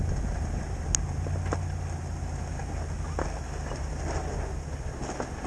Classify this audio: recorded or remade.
recorded